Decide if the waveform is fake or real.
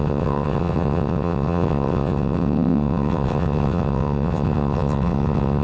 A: fake